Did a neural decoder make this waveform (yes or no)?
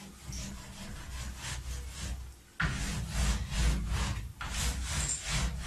no